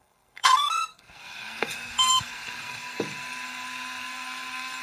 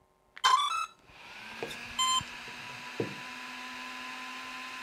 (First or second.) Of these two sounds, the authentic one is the second